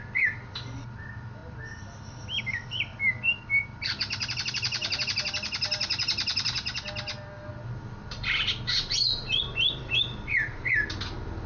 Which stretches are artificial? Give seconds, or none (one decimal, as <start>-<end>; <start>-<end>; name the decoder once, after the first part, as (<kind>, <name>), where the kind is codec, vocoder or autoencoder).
0.0-1.4 (vocoder, BigVGAN v2); 2.4-4.8; 7.5-11.5